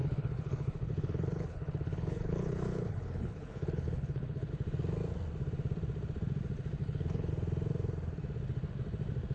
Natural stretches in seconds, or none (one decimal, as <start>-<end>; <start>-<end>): 4.5-6.8; 7.3-9.3